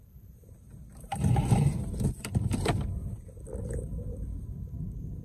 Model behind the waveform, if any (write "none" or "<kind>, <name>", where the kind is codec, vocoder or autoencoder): none